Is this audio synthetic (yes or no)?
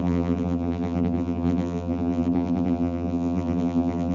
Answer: yes